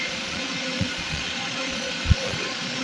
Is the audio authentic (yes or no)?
no